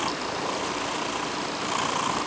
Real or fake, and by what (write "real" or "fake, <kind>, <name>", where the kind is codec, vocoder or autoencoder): real